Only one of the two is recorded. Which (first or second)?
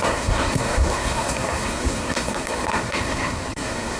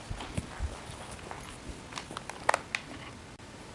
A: second